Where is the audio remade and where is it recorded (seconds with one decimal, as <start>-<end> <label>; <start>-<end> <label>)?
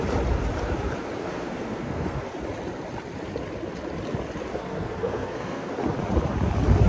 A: 0.0-1.2 recorded; 1.2-2.3 remade; 2.3-4.5 recorded; 4.5-5.7 remade; 5.7-6.9 recorded